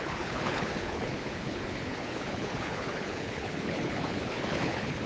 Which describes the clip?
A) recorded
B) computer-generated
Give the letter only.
B